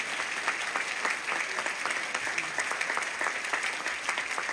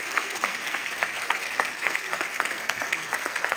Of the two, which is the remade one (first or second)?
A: second